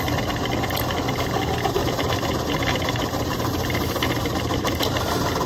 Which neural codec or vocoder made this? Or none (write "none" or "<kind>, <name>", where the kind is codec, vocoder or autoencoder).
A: none